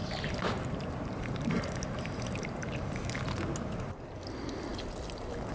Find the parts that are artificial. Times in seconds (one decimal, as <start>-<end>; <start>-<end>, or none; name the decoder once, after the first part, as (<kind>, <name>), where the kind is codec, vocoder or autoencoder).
0.0-3.2 (vocoder, BigVGAN v2)